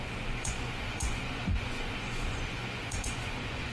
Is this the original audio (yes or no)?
no